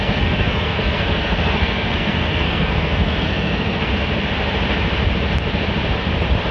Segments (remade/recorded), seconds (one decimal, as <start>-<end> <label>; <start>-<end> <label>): 0.0-3.9 remade; 3.9-6.5 recorded